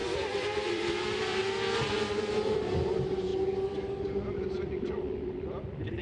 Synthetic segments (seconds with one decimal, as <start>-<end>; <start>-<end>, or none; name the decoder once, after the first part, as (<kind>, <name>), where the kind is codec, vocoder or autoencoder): 0.0-1.4 (vocoder, BigVGAN v2); 2.1-3.3; 4.1-6.0